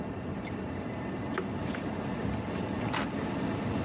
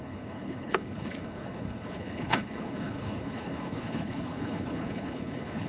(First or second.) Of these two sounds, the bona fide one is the first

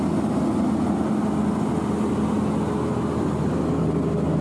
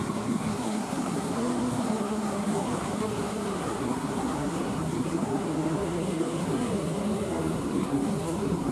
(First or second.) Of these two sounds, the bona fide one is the first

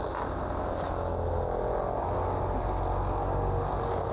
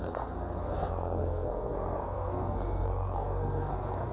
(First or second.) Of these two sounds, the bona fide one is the first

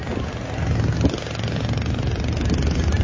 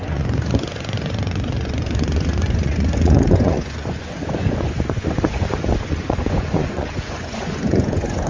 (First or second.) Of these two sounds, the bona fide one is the first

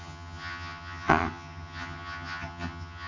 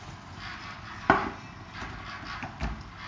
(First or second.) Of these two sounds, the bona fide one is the second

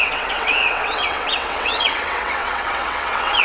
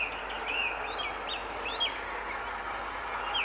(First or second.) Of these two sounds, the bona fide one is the second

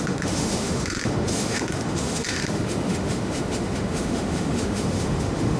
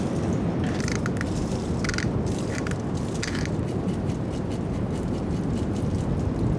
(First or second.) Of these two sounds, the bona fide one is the second